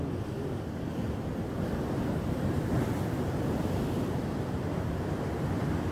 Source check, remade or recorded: recorded